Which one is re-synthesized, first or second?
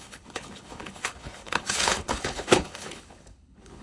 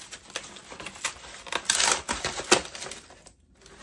first